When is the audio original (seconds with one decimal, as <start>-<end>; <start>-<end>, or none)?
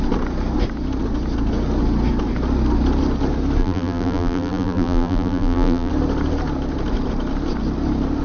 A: 0.0-3.6; 5.9-8.2